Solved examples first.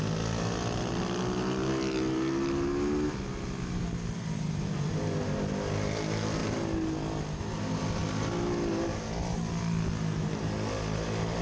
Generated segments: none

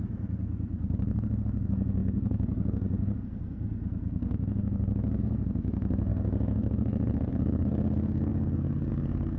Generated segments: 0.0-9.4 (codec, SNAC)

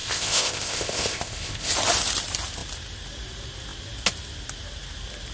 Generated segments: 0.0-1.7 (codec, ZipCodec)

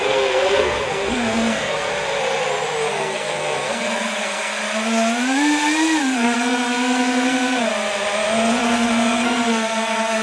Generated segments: 0.0-1.9 (codec, SNAC); 2.9-4.6; 6.0-7.7; 8.6-10.2

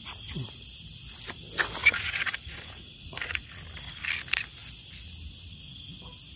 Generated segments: 1.8-3.6 (vocoder, Vocos)

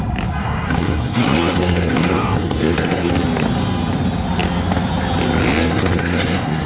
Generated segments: 0.4-3.1 (codec, SNAC); 5.6-6.7

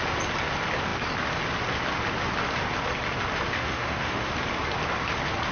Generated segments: 3.5-4.3 (autoencoder, DAC-VAE)